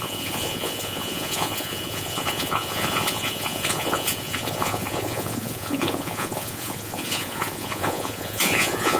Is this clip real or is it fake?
fake